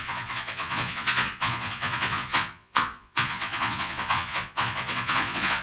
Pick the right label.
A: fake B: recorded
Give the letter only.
A